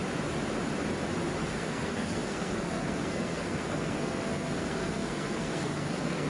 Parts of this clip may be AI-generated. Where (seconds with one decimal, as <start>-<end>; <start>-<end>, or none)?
1.5-6.3